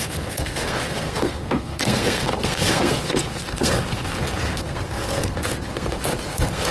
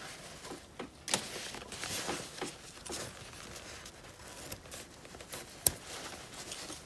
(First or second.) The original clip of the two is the second